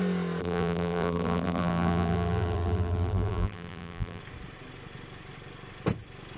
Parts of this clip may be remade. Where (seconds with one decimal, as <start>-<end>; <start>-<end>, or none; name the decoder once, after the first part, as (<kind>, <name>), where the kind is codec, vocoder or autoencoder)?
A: 0.4-4.2 (vocoder, BigVGAN v2)